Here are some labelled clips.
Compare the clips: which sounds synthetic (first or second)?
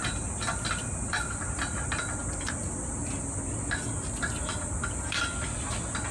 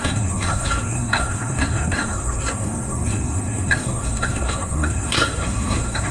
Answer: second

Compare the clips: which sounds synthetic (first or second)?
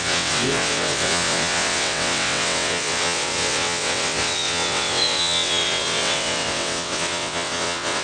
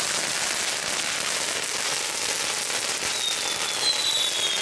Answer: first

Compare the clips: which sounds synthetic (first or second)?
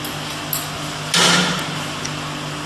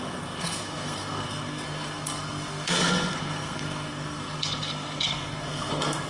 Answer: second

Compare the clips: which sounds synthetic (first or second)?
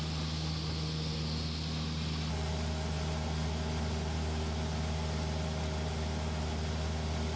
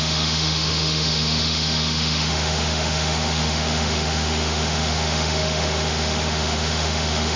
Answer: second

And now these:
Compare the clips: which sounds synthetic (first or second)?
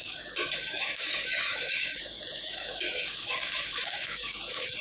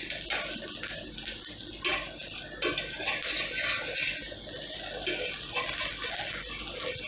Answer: first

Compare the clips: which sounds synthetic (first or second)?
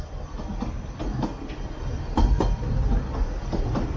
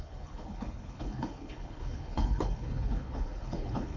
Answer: second